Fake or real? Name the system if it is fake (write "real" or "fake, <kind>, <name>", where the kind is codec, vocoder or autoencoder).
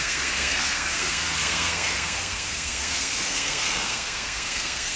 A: fake, codec, SNAC